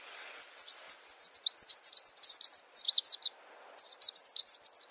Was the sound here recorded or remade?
recorded